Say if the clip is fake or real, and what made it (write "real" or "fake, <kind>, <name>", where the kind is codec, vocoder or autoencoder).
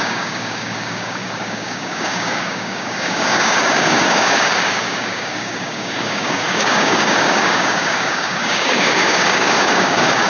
fake, codec, DAC